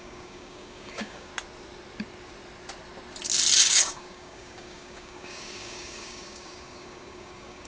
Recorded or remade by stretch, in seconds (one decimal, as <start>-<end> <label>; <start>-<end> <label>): 0.0-1.3 remade; 1.3-3.7 recorded; 3.7-7.7 remade